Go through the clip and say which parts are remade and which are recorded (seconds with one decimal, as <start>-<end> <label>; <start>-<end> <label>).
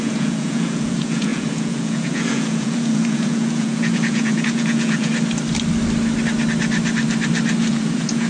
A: 0.0-5.1 remade; 5.1-7.7 recorded; 7.7-8.3 remade